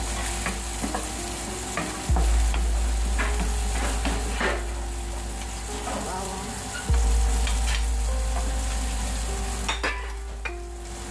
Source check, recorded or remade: recorded